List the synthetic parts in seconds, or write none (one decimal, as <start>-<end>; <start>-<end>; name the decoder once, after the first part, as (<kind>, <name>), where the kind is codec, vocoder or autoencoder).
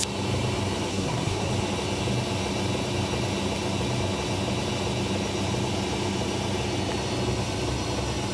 0.9-1.5 (codec, SNAC)